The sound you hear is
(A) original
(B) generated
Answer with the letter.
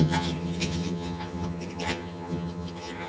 B